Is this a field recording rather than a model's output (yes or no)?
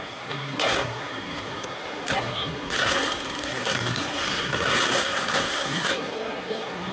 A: no